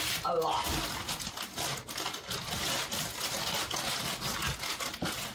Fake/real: real